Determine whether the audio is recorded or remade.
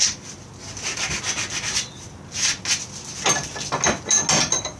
recorded